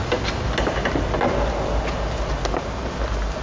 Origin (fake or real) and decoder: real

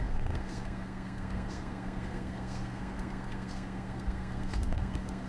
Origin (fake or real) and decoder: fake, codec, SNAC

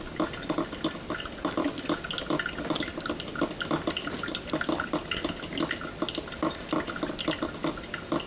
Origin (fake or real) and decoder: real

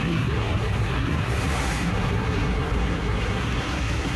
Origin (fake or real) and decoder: fake, codec, SNAC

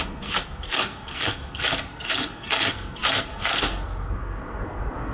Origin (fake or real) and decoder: fake, codec, SNAC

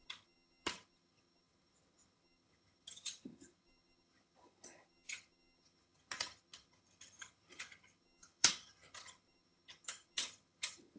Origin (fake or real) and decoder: fake, vocoder, HiFi-GAN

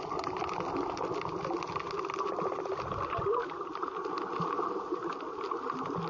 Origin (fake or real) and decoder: real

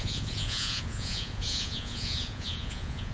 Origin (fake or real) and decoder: fake, vocoder, Vocos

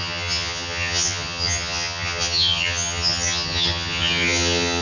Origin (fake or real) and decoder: fake, vocoder, HiFi-GAN